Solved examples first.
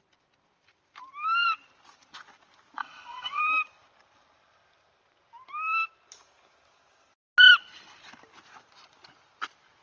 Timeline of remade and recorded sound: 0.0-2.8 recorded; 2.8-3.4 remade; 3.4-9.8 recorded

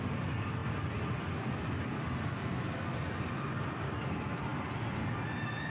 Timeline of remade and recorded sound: 0.0-5.7 recorded

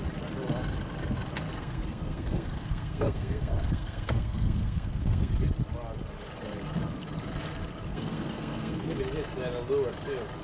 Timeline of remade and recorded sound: 0.0-1.6 recorded; 1.6-5.3 remade; 5.3-7.9 recorded; 7.9-9.0 remade; 9.0-10.4 recorded

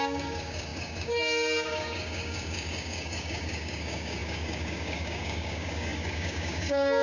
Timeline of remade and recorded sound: 0.0-7.0 remade

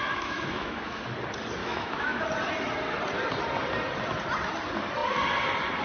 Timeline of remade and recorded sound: 0.0-1.0 remade; 1.0-1.6 recorded; 1.6-2.2 remade; 2.2-5.8 recorded